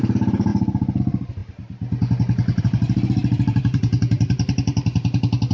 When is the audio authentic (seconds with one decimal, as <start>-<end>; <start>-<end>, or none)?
0.5-1.0; 1.4-2.6